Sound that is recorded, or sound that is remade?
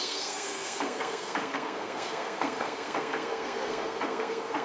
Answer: remade